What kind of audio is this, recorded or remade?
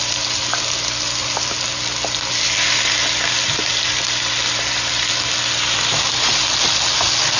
recorded